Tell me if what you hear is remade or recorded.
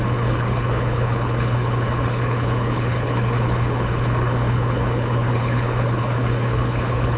remade